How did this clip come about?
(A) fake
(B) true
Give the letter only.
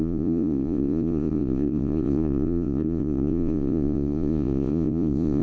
A